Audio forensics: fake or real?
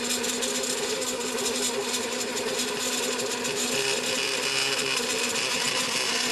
real